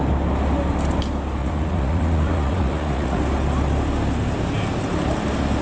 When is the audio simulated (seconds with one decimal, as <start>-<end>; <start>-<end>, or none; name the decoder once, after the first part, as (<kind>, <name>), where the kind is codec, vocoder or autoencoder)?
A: 1.4-3.2 (vocoder, Vocos)